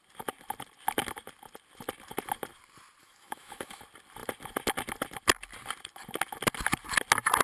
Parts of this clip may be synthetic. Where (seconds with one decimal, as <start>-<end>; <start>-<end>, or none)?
3.0-3.8